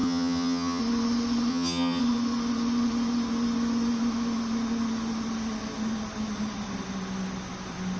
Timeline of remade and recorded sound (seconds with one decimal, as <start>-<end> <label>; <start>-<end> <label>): 0.0-0.8 remade; 0.8-1.5 recorded; 1.5-2.0 remade; 2.0-8.0 recorded